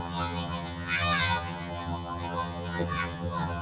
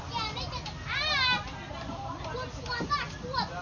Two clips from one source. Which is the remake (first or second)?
first